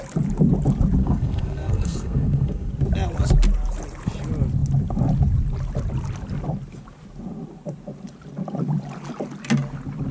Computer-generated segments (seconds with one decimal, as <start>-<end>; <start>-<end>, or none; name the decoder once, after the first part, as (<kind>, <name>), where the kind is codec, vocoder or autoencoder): 1.0-2.7 (codec, SNAC)